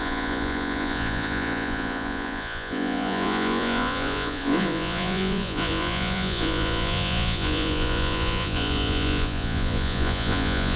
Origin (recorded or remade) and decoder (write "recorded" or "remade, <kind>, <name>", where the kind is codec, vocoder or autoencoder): remade, vocoder, Vocos